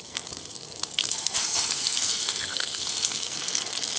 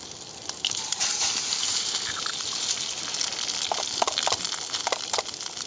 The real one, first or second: second